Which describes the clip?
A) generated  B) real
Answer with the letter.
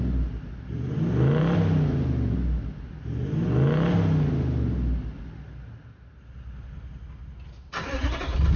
B